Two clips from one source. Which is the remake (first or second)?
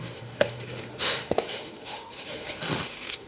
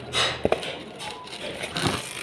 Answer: first